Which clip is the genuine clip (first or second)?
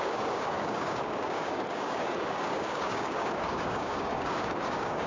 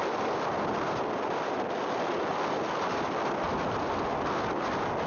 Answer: second